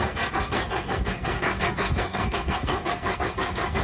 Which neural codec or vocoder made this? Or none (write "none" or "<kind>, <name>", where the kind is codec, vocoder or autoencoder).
codec, SNAC